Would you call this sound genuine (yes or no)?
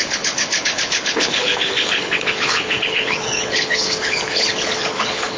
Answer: no